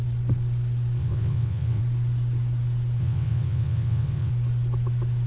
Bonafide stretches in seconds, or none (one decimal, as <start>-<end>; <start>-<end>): 0.0-1.0; 1.8-3.0; 4.3-5.3